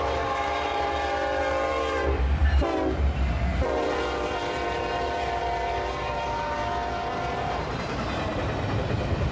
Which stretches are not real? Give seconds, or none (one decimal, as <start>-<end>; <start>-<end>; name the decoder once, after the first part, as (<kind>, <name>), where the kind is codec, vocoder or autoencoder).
0.0-6.6 (vocoder, BigVGAN v2); 7.3-9.3